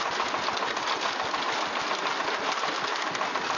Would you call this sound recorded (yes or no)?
yes